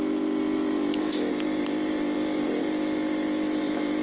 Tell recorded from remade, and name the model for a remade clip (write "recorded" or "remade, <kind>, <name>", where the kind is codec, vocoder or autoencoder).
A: remade, vocoder, BigVGAN v2